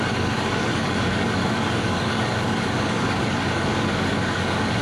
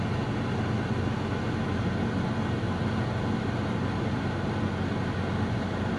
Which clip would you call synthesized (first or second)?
first